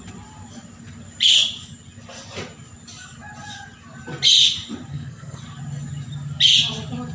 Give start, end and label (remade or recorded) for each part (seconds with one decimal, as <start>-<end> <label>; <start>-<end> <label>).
0.0-4.9 recorded; 4.9-5.4 remade; 5.4-7.1 recorded